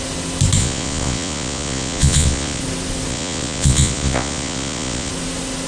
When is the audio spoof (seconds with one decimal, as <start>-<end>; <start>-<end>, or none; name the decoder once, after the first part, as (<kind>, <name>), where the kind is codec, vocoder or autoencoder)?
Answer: 0.6-2.6 (vocoder, Vocos); 3.1-5.1